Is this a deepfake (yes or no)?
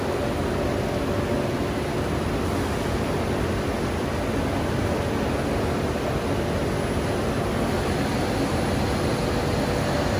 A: no